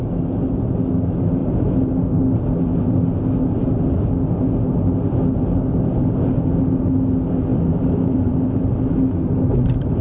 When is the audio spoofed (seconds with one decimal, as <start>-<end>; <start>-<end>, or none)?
7.5-8.8